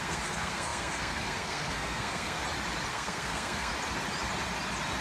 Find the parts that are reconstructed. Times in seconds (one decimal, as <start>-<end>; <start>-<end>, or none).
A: 0.0-2.4; 2.9-3.7

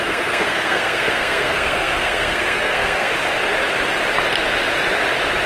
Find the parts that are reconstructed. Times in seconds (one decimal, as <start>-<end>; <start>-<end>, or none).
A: 0.0-3.1

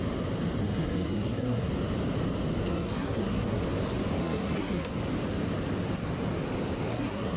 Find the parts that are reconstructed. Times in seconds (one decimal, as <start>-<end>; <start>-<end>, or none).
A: 0.6-1.7; 2.6-3.6; 4.2-4.9; 6.9-7.4

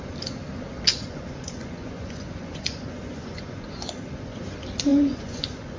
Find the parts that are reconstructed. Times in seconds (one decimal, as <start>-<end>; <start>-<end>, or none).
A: 0.9-4.4; 4.9-5.8